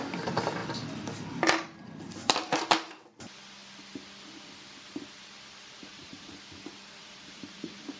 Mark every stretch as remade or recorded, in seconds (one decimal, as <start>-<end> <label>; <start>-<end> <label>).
0.0-5.8 recorded; 5.8-6.3 remade; 6.3-7.0 recorded; 7.0-8.0 remade